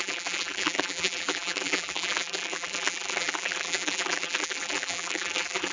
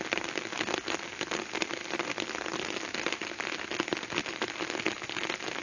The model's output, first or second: first